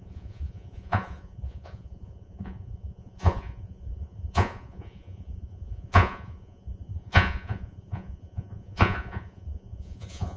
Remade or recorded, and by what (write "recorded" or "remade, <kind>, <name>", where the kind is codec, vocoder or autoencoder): remade, vocoder, Vocos